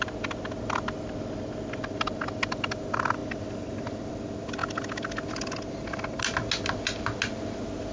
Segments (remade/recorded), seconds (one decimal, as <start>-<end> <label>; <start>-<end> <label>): 0.0-7.9 recorded